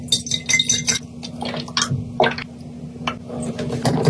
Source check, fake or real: real